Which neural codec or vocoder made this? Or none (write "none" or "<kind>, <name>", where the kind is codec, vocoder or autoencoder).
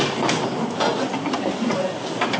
none